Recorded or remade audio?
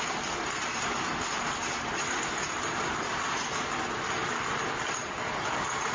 recorded